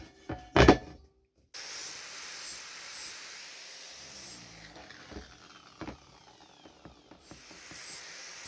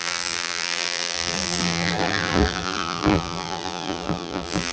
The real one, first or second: first